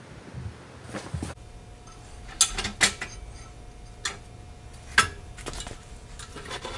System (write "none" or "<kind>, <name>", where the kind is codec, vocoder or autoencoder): none